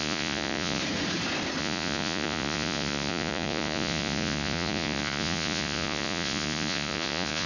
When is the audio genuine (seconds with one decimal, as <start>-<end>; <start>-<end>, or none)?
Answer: 0.8-1.6